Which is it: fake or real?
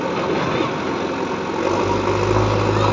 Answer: real